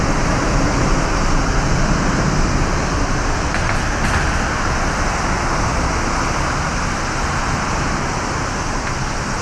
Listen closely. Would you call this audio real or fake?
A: real